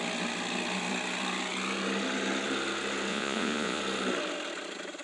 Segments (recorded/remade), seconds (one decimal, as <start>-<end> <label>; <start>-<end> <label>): 0.0-3.1 recorded; 3.1-3.8 remade; 3.8-5.0 recorded

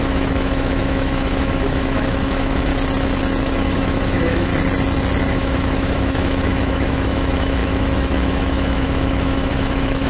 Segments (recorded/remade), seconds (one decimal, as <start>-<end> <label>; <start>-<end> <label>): 0.0-2.7 remade; 2.7-3.4 recorded; 3.4-4.5 remade; 4.5-5.3 recorded; 5.3-10.1 remade

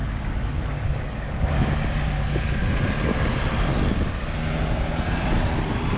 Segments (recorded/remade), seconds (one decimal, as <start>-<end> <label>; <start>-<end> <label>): 0.0-1.3 remade; 1.3-6.0 recorded

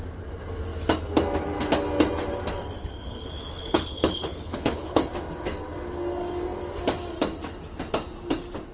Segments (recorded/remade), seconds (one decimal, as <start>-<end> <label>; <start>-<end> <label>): 0.0-2.8 recorded; 2.8-5.1 remade; 5.1-8.7 recorded

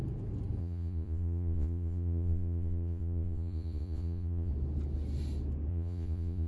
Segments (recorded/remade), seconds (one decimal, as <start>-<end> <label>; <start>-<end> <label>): 0.0-0.6 recorded; 0.6-4.5 remade; 4.5-5.7 recorded; 5.7-6.5 remade

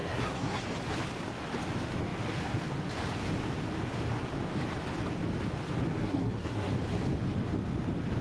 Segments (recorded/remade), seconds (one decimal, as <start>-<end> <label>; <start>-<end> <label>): 0.0-0.6 remade; 0.6-6.0 recorded; 6.0-6.7 remade; 6.7-8.2 recorded